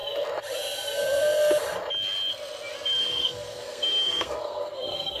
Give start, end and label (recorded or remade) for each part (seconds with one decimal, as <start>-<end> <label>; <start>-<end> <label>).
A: 0.0-3.0 recorded; 3.0-5.2 remade